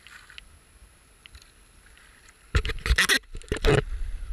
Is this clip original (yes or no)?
yes